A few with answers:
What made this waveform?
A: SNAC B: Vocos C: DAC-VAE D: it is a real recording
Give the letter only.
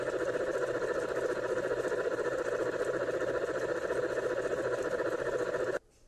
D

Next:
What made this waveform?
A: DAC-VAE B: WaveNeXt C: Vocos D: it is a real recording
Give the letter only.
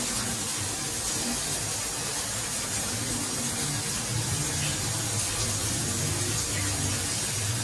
D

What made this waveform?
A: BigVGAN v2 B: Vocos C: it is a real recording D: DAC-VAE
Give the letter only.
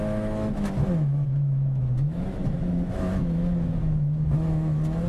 D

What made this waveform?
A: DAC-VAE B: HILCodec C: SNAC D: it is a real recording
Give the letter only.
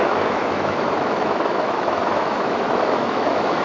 A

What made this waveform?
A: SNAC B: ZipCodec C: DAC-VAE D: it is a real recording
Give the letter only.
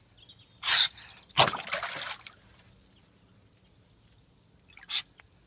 D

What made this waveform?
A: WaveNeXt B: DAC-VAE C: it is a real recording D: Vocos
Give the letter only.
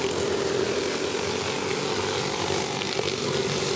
C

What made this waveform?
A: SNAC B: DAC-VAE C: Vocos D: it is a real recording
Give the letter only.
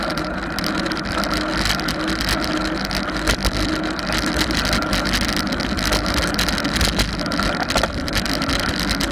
D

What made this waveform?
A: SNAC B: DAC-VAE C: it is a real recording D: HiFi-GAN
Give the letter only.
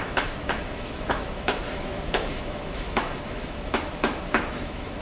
B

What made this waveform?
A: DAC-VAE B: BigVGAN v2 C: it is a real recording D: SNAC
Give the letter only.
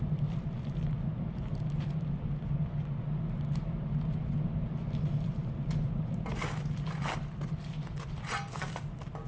C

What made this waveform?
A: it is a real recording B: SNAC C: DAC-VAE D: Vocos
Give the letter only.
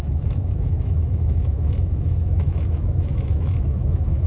C